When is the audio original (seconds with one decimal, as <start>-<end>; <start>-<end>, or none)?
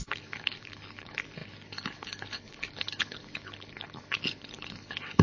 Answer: none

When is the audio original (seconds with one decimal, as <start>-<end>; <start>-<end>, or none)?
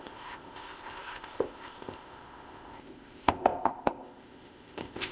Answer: none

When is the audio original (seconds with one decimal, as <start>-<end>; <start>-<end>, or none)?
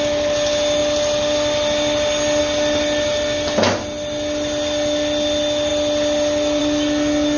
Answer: 0.0-7.4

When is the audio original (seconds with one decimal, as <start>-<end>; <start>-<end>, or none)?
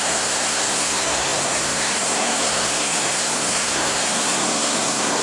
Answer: none